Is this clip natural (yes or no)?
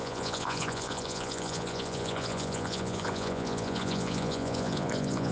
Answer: no